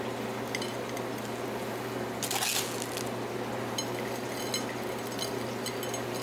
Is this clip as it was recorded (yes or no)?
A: yes